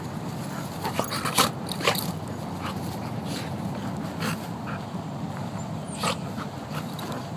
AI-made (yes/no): no